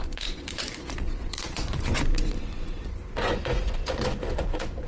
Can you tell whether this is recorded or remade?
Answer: remade